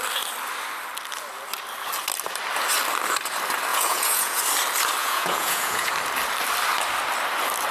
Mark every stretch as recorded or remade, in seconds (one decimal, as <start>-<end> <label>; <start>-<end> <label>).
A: 0.0-3.7 recorded; 3.7-4.4 remade; 4.4-5.0 recorded; 5.0-5.9 remade; 5.9-7.7 recorded